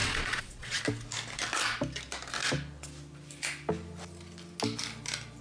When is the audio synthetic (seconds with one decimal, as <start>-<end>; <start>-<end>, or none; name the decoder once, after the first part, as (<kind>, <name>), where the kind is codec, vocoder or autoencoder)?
0.0-0.8 (vocoder, Vocos)